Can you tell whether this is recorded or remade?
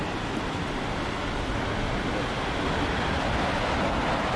recorded